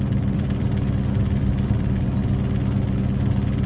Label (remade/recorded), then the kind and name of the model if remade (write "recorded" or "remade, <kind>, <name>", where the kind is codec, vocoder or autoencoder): remade, vocoder, BigVGAN v2